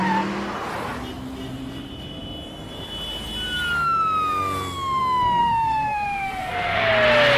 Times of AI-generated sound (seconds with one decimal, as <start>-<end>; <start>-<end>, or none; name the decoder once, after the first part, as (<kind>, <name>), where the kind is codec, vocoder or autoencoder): 5.4-6.9 (codec, SNAC)